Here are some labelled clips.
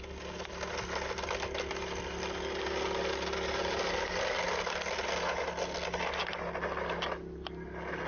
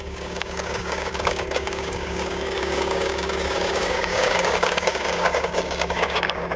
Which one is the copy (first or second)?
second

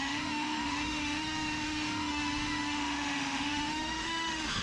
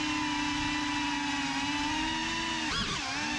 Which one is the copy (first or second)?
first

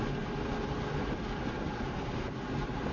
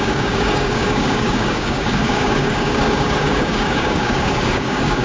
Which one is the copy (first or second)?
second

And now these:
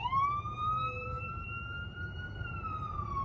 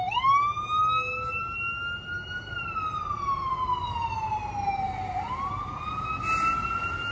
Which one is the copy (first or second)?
first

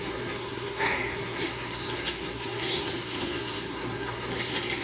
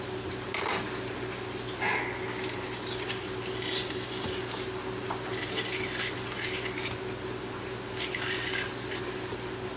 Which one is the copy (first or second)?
first